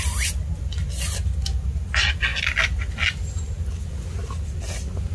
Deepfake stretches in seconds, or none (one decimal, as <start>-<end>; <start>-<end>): none